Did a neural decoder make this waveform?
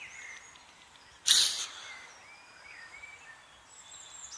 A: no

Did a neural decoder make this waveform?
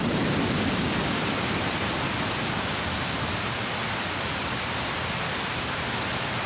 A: yes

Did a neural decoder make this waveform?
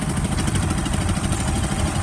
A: yes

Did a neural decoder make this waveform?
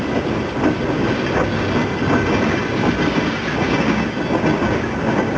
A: no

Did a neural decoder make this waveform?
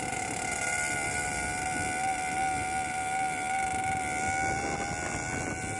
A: no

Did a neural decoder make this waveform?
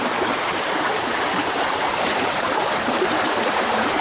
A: yes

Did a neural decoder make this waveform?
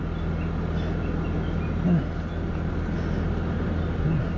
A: no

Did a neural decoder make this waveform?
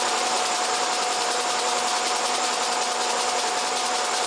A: yes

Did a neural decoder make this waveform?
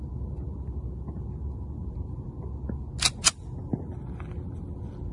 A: no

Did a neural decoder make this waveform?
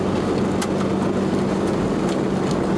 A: no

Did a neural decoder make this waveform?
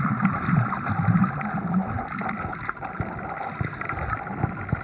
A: no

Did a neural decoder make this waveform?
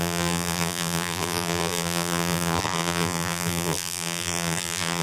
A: yes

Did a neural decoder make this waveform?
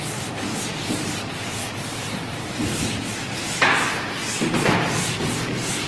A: no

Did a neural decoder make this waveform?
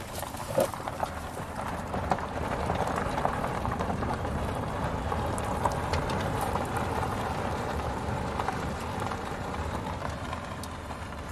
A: yes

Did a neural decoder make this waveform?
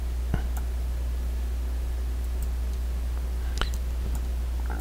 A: no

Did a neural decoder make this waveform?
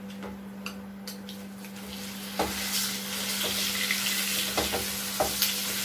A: no